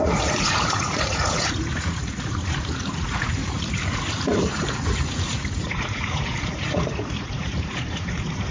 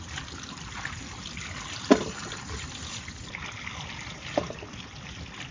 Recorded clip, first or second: second